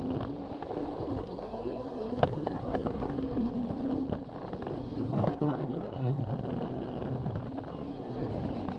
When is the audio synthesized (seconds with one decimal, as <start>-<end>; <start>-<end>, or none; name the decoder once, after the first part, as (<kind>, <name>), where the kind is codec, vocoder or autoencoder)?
1.2-3.5 (codec, SNAC); 4.8-6.2; 7.7-8.3